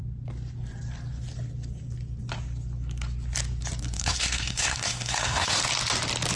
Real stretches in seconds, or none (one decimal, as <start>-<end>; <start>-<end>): 0.0-3.8; 5.6-6.4